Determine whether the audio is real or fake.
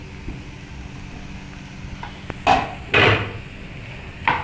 real